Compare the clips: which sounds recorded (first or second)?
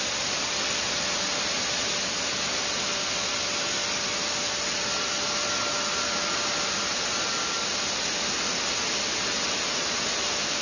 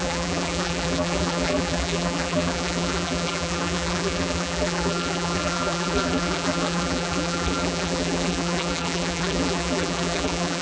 first